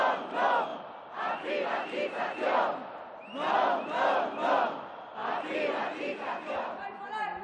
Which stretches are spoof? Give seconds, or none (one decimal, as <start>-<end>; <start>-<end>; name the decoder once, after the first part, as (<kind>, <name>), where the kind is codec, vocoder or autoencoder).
none